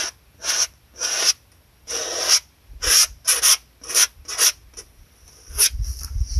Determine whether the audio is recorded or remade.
recorded